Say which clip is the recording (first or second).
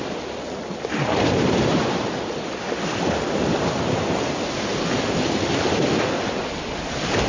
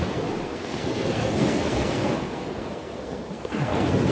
first